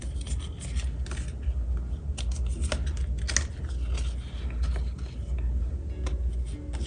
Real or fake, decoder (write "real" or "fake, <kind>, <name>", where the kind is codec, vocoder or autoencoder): real